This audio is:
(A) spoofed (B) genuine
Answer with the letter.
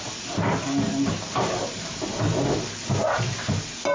B